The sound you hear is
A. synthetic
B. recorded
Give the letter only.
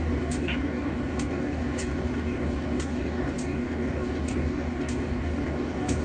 A